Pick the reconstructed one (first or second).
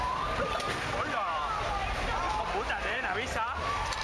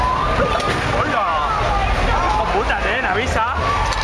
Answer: first